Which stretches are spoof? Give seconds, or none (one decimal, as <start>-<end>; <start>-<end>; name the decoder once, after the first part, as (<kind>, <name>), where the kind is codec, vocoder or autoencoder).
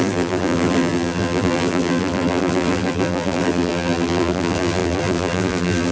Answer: 0.0-5.9 (vocoder, BigVGAN v2)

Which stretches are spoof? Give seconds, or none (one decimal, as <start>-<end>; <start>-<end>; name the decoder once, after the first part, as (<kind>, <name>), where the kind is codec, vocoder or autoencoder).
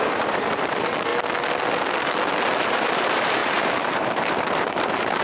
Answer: 0.0-1.1 (vocoder, BigVGAN v2); 2.6-5.2